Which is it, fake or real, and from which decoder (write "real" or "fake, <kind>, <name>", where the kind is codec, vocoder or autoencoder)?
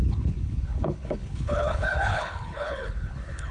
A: fake, codec, HILCodec